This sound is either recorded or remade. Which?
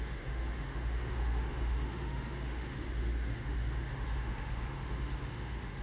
remade